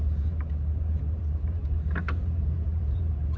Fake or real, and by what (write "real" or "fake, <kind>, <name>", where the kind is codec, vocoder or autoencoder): fake, vocoder, BigVGAN v2